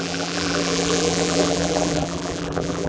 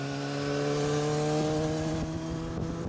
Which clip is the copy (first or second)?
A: first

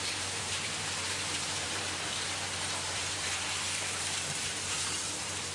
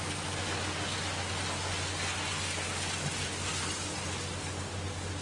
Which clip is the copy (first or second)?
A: first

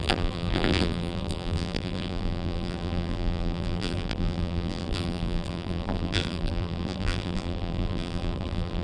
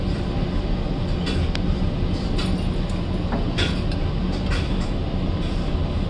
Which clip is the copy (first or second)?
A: first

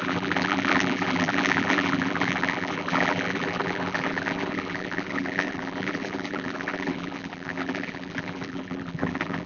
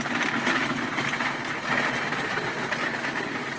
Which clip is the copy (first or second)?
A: first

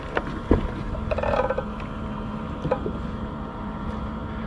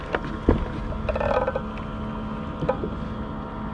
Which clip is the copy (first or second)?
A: first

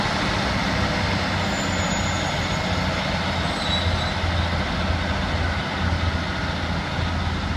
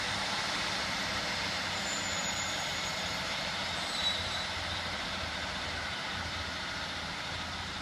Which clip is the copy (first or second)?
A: second